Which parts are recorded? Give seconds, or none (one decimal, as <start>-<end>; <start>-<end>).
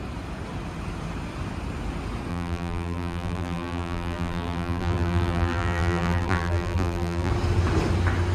0.0-2.3; 7.3-8.3